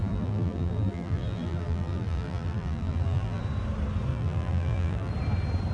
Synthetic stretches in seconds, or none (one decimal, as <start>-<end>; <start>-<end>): 0.0-3.4; 4.1-5.1